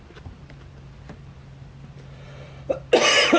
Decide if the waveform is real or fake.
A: real